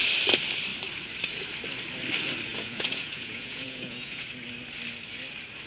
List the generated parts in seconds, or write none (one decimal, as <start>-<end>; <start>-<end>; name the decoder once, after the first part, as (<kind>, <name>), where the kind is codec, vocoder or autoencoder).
2.5-4.3 (vocoder, Vocos)